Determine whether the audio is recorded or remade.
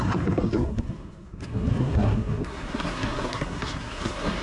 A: remade